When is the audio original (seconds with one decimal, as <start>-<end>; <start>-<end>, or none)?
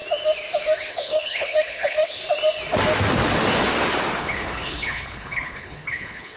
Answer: 0.0-0.9; 2.2-4.2